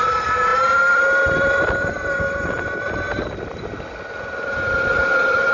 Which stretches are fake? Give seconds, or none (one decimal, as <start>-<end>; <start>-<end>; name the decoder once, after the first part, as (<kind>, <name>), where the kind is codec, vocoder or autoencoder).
none